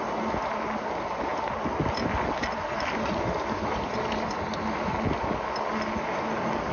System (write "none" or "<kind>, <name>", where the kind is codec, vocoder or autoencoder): none